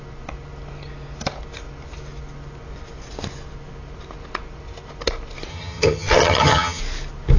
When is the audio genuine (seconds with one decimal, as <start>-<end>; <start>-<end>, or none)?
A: 0.0-5.5; 6.8-7.4